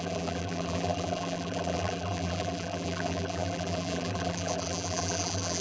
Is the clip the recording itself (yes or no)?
no